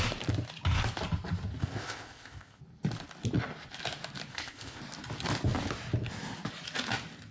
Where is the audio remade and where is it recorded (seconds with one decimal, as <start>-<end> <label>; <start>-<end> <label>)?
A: 0.0-1.6 recorded; 1.6-2.6 remade; 2.6-4.3 recorded; 4.3-4.8 remade; 4.8-7.3 recorded